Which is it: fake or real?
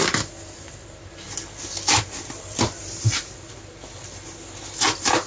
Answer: real